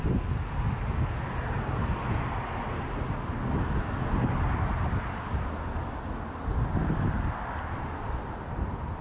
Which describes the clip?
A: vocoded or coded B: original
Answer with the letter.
B